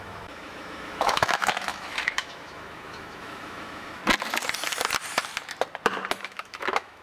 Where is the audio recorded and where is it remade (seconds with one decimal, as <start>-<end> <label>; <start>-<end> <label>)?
0.0-4.0 remade; 4.0-6.2 recorded; 6.2-7.0 remade